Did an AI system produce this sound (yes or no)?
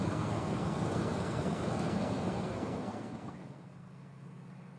yes